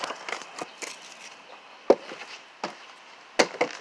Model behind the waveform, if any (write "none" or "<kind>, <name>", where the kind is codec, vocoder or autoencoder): none